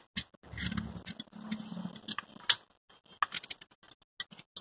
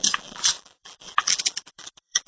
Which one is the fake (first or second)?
second